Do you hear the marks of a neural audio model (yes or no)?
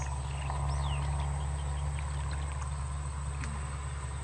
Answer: no